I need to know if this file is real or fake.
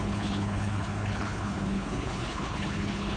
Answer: fake